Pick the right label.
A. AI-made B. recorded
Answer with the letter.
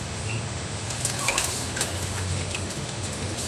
A